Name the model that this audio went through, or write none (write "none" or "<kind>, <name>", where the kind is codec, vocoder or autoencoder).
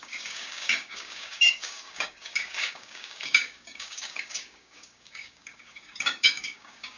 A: codec, DAC